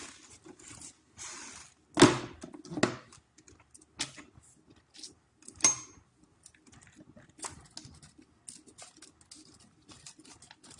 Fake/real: real